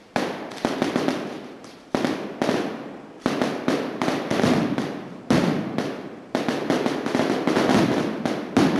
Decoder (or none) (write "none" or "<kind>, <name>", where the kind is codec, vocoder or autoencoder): vocoder, BigVGAN v2